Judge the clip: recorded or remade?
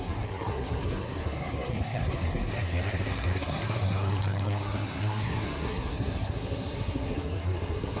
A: remade